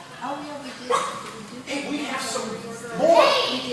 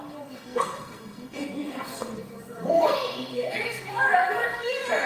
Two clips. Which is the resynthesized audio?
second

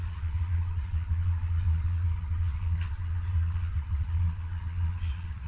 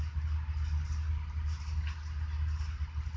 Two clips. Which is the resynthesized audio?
first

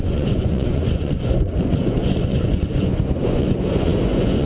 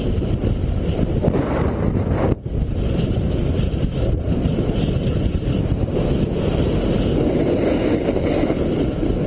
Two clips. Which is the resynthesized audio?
first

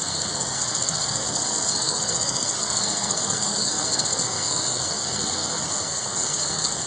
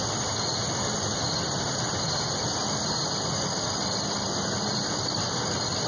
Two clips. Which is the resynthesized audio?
first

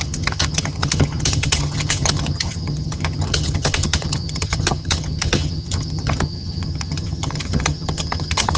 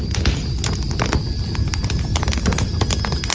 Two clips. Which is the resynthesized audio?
first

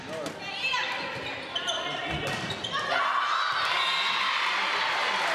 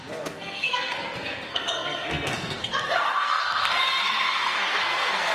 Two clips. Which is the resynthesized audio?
second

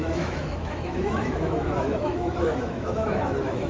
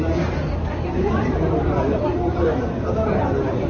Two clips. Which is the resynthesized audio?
first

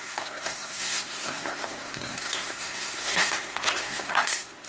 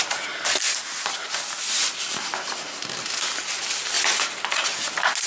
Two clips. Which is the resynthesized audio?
first